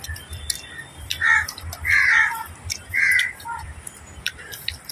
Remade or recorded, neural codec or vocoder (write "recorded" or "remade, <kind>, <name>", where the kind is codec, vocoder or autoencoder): recorded